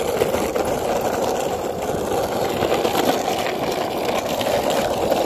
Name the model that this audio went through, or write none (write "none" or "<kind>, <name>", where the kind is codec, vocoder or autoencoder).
none